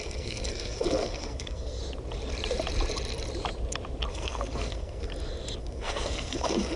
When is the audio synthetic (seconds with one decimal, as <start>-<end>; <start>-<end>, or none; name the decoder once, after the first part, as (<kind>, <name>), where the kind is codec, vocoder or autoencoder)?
0.0-1.8 (codec, SNAC); 4.1-5.1; 5.6-6.8